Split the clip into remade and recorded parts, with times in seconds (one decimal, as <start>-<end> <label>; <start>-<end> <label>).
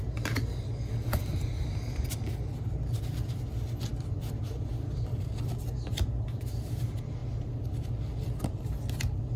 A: 0.0-9.4 recorded